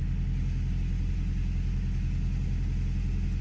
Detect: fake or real real